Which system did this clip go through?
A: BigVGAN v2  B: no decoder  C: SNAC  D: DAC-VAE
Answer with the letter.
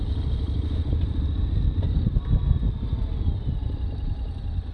B